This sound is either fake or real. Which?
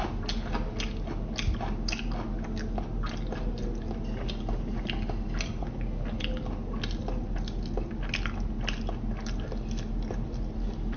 real